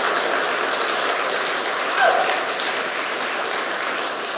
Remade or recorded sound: recorded